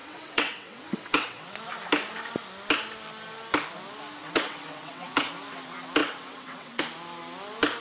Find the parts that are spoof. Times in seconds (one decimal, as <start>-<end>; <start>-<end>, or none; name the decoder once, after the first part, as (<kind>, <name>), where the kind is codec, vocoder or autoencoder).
0.0-1.6 (vocoder, WaveNeXt); 4.2-5.3; 6.0-6.8